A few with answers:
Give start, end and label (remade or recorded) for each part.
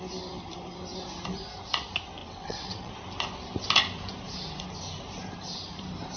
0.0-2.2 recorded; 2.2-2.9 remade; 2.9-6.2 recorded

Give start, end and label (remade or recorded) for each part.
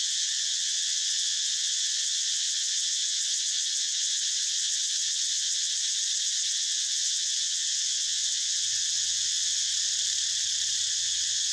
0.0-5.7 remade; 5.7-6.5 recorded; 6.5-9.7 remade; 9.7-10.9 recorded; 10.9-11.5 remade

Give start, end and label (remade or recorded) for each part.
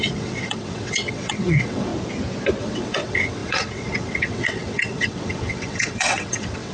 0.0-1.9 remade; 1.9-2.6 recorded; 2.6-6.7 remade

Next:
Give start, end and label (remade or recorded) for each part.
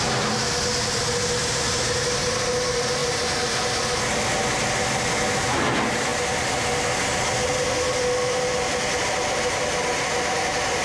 0.0-10.8 recorded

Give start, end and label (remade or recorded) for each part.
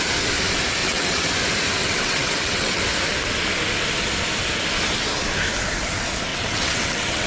0.0-0.8 recorded; 0.8-1.3 remade; 1.3-1.8 recorded; 1.8-2.8 remade; 2.8-6.3 recorded; 6.3-7.3 remade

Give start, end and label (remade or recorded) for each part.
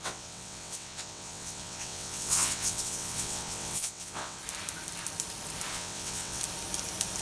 0.0-4.4 remade; 4.4-5.7 recorded; 5.7-6.4 remade; 6.4-7.2 recorded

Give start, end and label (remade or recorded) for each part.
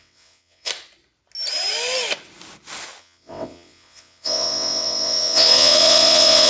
0.0-0.7 remade; 0.7-3.0 recorded; 3.0-6.5 remade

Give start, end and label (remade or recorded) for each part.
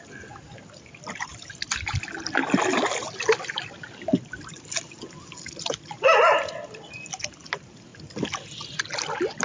0.0-9.4 recorded